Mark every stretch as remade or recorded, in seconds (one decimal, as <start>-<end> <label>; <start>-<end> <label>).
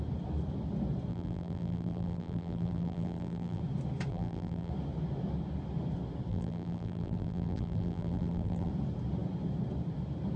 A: 0.0-1.1 recorded; 1.1-3.6 remade; 3.6-4.1 recorded; 4.1-4.7 remade; 4.7-6.3 recorded; 6.3-8.7 remade; 8.7-10.4 recorded